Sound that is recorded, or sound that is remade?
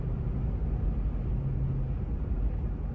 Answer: recorded